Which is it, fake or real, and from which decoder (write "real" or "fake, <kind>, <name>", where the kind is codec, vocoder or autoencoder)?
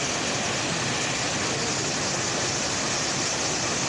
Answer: real